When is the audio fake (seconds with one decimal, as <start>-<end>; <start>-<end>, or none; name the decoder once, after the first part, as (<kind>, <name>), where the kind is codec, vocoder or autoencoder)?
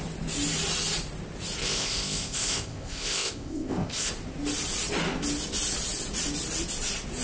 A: 1.6-4.1 (codec, ZipCodec)